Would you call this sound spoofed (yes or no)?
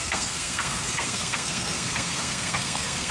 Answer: yes